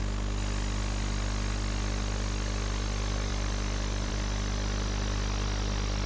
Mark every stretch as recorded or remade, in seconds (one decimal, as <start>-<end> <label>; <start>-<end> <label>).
0.0-3.3 recorded; 3.3-4.1 remade; 4.1-6.1 recorded